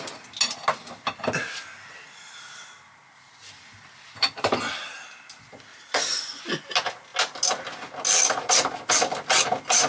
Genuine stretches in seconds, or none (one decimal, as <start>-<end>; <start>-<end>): 0.0-5.7; 6.4-9.9